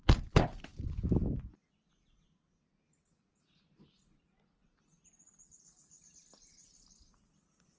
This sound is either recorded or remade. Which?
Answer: recorded